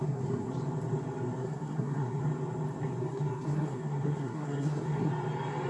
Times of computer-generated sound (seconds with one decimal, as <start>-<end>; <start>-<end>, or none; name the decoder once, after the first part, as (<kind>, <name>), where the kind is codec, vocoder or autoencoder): 0.0-0.5 (codec, SNAC); 1.4-2.2; 3.0-5.1